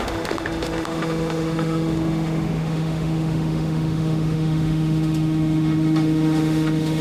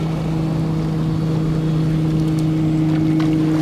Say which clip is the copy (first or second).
first